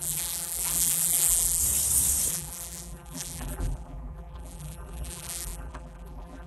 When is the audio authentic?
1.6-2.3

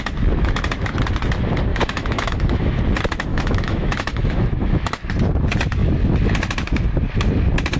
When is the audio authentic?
0.0-1.7; 2.8-3.3; 4.9-7.8

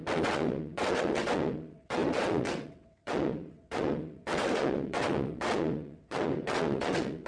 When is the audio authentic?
none

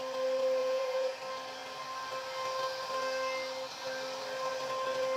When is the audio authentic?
0.0-0.6; 1.2-5.2